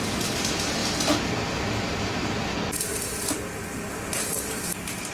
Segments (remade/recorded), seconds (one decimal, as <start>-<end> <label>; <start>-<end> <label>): 0.0-5.1 recorded